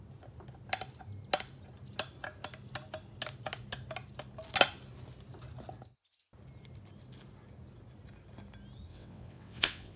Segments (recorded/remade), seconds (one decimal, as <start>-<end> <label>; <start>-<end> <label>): 0.0-8.9 recorded; 8.9-10.0 remade